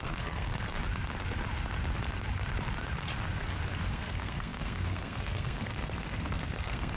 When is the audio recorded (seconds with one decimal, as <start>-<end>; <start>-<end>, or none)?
0.5-3.9